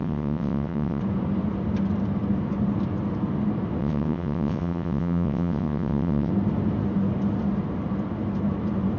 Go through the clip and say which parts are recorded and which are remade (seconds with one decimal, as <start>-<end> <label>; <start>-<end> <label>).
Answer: 0.0-1.0 remade; 1.0-3.8 recorded; 3.8-6.3 remade; 6.3-9.0 recorded